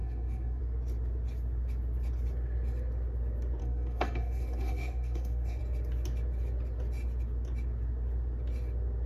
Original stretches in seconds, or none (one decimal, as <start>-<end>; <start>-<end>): 0.6-3.6; 5.6-9.1